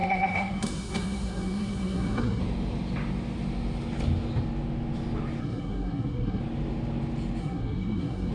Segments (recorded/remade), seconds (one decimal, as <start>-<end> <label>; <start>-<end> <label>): 0.0-2.4 remade; 2.4-5.4 recorded; 5.4-6.4 remade; 6.4-7.4 recorded; 7.4-8.3 remade